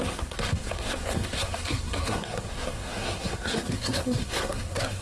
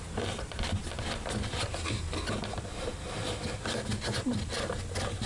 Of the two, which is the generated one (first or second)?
first